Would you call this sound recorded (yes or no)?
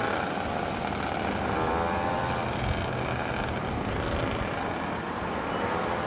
yes